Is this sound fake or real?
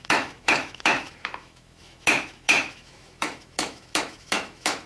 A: fake